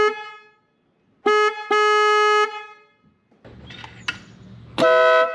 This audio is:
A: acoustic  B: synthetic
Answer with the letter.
A